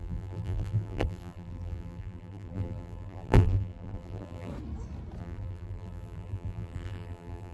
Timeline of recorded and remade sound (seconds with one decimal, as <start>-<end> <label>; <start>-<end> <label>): 0.0-4.5 remade; 4.5-5.2 recorded; 5.2-7.5 remade